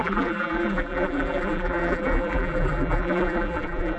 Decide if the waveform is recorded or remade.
remade